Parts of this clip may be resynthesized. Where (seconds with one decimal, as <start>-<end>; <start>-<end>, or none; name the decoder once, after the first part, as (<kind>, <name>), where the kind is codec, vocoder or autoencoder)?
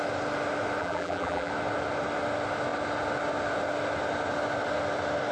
0.8-1.5 (vocoder, BigVGAN v2)